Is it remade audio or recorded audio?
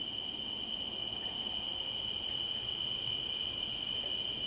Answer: recorded